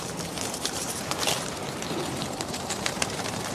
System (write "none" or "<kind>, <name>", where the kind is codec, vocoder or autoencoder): vocoder, BigVGAN v2